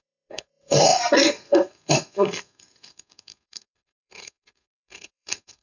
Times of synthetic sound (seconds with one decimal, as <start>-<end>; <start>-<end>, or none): 0.0-5.6

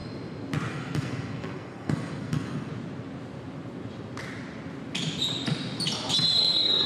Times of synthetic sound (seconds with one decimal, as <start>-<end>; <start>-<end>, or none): 0.7-2.7; 6.4-6.9

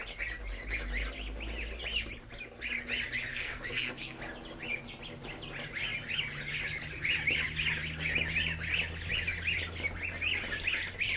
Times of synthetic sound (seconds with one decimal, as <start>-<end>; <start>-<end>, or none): 3.3-4.2

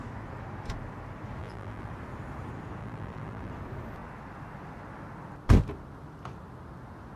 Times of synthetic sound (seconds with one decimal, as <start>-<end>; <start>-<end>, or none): 1.4-1.9; 2.8-3.5